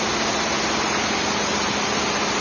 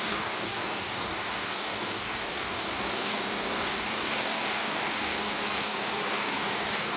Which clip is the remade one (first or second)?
second